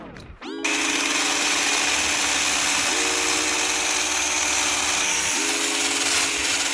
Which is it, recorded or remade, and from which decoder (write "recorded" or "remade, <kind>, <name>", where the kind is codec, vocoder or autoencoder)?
recorded